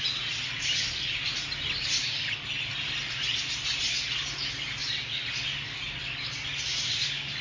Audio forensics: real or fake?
real